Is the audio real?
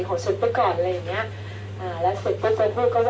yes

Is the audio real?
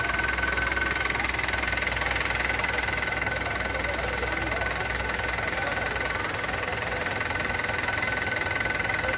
yes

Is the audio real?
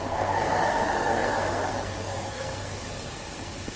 no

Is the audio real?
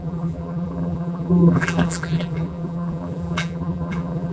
no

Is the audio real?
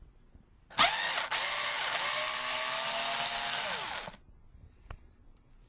yes